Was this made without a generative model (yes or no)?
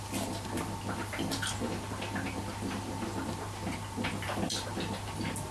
yes